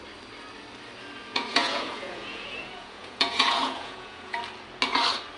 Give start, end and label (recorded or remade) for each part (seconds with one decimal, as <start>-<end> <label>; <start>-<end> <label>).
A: 0.0-1.3 recorded; 1.3-4.4 remade; 4.4-5.4 recorded